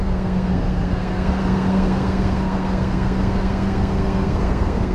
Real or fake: fake